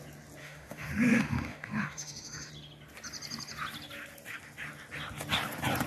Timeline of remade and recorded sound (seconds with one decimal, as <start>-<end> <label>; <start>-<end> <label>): 0.0-0.4 recorded; 0.4-2.5 remade; 2.5-5.9 recorded